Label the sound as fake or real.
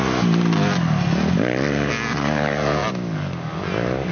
real